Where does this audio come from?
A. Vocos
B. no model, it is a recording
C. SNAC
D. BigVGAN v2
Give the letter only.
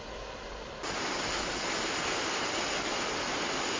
B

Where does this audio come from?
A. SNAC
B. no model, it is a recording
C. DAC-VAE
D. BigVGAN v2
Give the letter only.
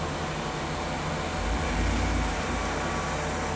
B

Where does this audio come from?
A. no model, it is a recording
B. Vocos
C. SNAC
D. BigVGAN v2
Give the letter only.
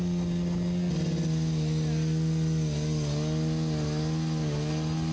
A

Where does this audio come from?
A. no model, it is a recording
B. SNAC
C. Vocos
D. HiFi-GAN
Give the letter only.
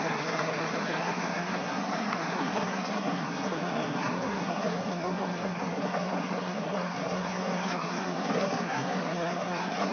B